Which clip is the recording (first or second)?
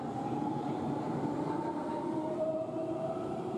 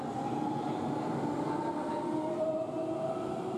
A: second